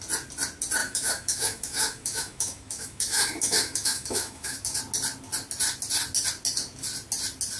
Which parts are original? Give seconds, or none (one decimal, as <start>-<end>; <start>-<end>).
0.0-0.8; 4.8-7.6